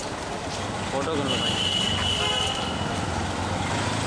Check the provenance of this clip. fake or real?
real